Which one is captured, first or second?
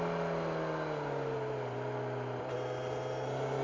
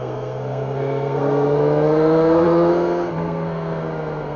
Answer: first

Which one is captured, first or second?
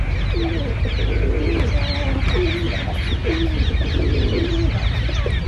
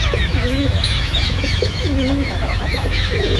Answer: first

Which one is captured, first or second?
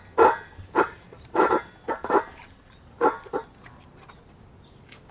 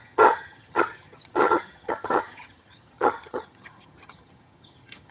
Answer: first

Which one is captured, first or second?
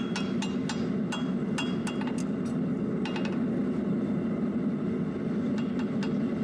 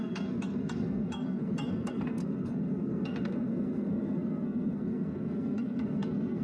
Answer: first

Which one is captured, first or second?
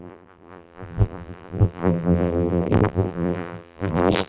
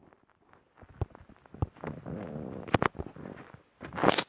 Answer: second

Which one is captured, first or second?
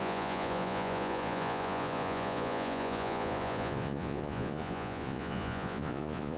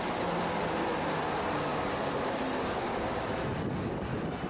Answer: second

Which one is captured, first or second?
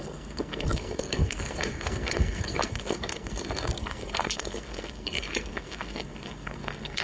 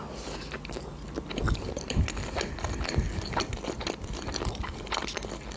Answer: second